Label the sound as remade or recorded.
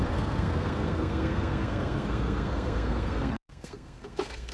remade